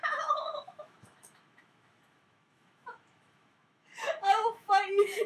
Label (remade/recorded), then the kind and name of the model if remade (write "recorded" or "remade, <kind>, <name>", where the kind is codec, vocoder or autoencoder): remade, autoencoder, DAC-VAE